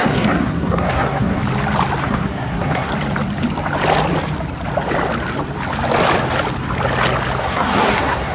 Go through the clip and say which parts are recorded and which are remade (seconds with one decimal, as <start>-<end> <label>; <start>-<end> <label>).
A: 0.0-1.4 remade; 1.4-2.0 recorded; 2.0-2.9 remade; 2.9-7.4 recorded; 7.4-8.3 remade